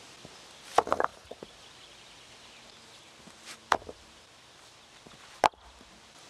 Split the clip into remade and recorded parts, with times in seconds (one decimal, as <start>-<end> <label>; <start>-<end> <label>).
0.0-1.1 recorded; 1.1-2.3 remade; 2.3-3.6 recorded; 3.6-6.3 remade